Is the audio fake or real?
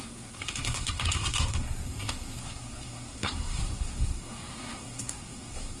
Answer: fake